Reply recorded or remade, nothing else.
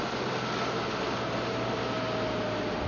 recorded